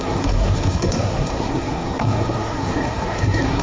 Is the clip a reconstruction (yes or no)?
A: yes